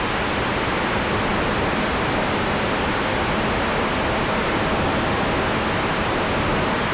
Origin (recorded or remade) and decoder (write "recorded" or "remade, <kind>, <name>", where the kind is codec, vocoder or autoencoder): recorded